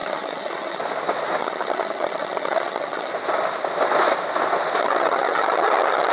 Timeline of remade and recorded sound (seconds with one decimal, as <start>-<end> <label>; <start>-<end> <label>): 0.0-0.8 remade; 0.8-1.4 recorded; 1.4-3.1 remade; 3.1-4.8 recorded; 4.8-6.1 remade